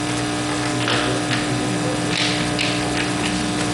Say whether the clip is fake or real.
real